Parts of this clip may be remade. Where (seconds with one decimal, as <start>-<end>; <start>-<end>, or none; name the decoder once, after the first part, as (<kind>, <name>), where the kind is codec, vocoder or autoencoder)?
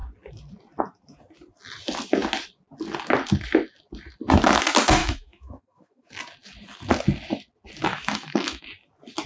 5.0-6.1 (autoencoder, DAC-VAE); 7.9-8.6